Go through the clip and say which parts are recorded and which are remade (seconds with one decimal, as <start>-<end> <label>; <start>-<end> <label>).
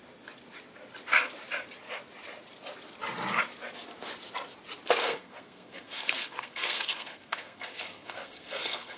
0.0-5.0 recorded; 5.0-9.0 remade